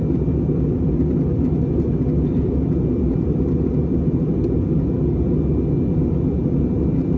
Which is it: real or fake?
real